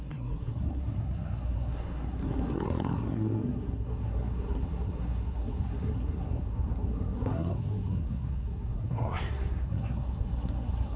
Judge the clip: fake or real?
fake